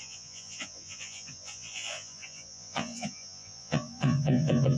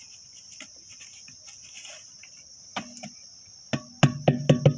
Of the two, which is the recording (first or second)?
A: second